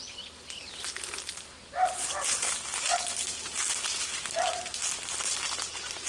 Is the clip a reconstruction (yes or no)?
no